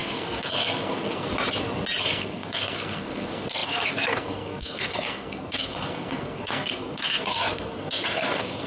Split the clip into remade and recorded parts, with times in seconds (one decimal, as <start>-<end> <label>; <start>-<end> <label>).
0.0-1.3 remade; 1.3-2.0 recorded; 2.0-8.7 remade